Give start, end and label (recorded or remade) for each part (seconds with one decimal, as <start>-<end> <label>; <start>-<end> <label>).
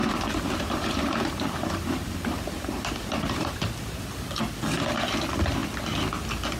0.0-4.0 remade; 4.0-6.6 recorded